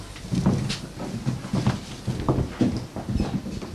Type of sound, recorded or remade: recorded